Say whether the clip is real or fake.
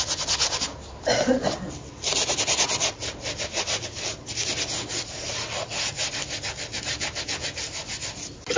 real